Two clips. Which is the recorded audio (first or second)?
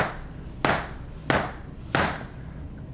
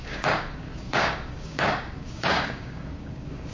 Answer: first